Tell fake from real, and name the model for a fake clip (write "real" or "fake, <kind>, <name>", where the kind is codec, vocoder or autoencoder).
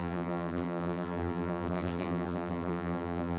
fake, vocoder, BigVGAN v2